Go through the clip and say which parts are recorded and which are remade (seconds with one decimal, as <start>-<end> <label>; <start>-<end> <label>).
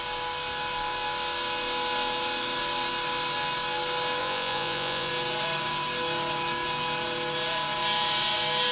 0.0-4.2 recorded; 4.2-5.1 remade; 5.1-8.7 recorded